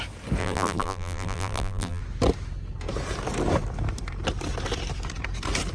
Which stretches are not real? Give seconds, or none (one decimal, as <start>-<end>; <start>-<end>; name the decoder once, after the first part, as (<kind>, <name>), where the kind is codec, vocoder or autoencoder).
0.4-2.0 (vocoder, BigVGAN v2)

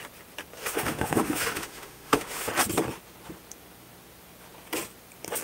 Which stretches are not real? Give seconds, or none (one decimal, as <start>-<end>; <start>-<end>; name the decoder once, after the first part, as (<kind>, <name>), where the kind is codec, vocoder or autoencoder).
0.6-2.5 (autoencoder, DAC-VAE)

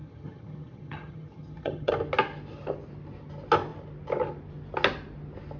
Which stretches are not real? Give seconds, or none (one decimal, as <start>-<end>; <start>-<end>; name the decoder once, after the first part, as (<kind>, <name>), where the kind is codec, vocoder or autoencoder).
0.0-1.9 (vocoder, HiFi-GAN)

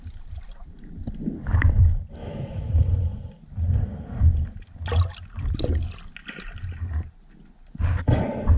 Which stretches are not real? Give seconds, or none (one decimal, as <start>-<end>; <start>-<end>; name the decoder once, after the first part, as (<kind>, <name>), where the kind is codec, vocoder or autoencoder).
2.2-2.7 (autoencoder, DAC-VAE)

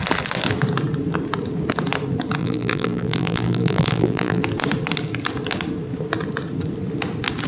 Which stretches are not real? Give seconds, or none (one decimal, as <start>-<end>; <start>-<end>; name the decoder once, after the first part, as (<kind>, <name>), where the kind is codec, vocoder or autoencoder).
2.4-4.4 (vocoder, BigVGAN v2)

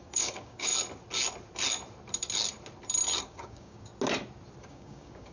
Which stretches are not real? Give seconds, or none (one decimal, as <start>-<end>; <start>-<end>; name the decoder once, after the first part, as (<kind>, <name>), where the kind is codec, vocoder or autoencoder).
0.0-0.7 (codec, DAC); 3.2-3.9; 4.6-5.3

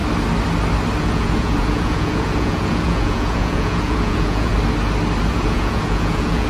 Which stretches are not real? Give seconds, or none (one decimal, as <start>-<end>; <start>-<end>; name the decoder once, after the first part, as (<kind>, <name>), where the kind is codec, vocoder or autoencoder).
1.0-4.5 (vocoder, Vocos); 5.3-6.5

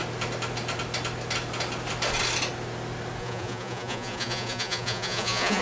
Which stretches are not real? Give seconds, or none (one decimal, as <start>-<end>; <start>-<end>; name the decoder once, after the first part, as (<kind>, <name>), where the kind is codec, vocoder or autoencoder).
3.2-5.6 (vocoder, Vocos)